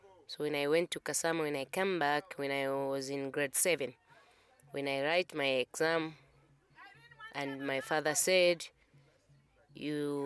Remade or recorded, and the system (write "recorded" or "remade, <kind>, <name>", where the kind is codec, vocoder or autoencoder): recorded